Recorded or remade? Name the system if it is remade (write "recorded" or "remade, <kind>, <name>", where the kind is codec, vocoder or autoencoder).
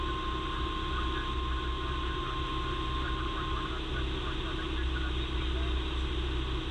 recorded